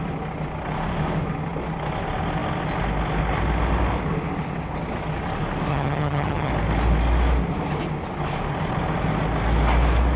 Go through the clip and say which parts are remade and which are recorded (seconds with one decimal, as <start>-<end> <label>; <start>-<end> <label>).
0.0-5.7 recorded; 5.7-6.5 remade; 6.5-10.2 recorded